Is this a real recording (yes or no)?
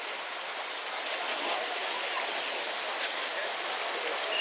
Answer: yes